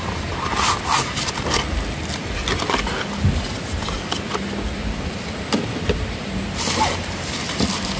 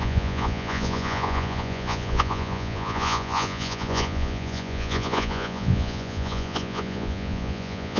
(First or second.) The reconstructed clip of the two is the second